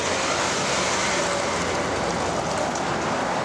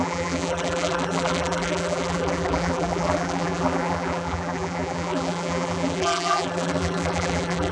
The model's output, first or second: second